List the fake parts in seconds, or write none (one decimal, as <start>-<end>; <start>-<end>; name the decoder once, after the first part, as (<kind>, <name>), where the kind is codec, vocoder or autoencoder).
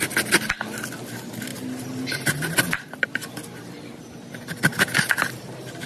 none